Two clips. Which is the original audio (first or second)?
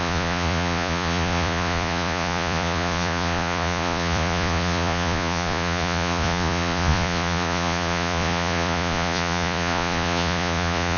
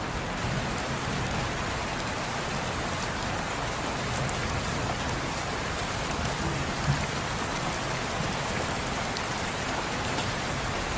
second